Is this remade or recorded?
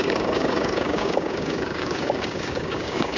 remade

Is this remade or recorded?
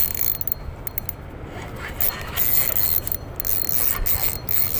recorded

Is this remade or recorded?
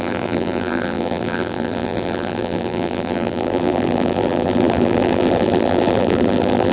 remade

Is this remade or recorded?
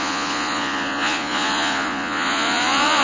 remade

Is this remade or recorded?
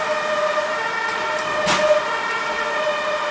recorded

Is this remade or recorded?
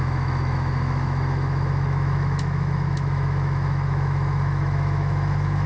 remade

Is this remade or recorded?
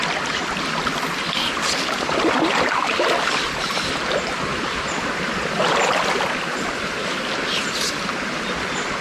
recorded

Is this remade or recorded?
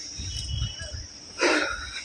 recorded